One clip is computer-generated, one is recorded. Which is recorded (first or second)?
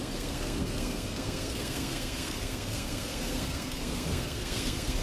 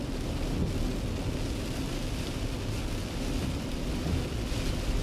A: second